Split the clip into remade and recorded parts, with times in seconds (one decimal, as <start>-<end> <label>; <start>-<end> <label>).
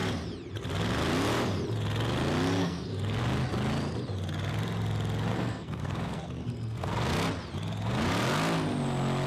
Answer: 0.0-2.6 recorded; 2.6-3.2 remade; 3.2-5.3 recorded; 5.3-7.1 remade; 7.1-9.3 recorded